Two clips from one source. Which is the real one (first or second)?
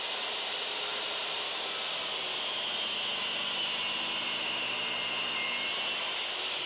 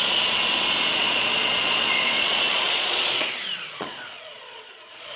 first